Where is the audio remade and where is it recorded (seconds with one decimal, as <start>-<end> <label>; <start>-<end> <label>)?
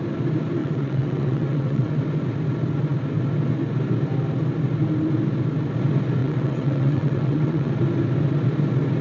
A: 0.0-0.6 recorded; 0.6-2.0 remade; 2.0-6.2 recorded; 6.2-7.7 remade; 7.7-9.0 recorded